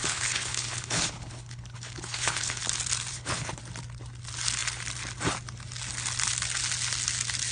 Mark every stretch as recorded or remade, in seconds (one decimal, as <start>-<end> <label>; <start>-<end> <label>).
0.0-2.6 remade; 2.6-3.1 recorded; 3.1-3.6 remade; 3.6-7.5 recorded

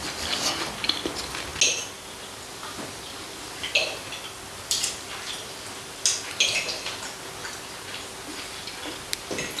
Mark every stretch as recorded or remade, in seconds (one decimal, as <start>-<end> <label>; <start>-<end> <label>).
0.0-9.6 recorded